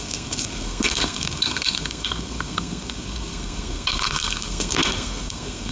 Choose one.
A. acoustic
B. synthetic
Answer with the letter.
B